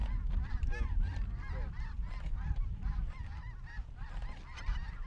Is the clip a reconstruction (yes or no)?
no